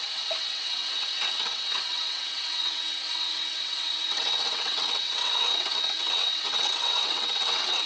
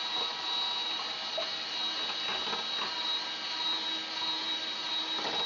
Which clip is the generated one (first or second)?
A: first